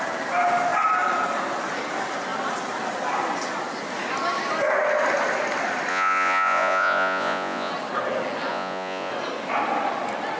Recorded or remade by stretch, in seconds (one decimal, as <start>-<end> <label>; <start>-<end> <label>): 0.0-5.9 recorded; 5.9-7.7 remade; 7.7-8.5 recorded; 8.5-9.1 remade; 9.1-10.4 recorded